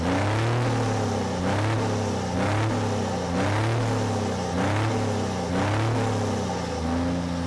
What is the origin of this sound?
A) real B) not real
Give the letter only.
A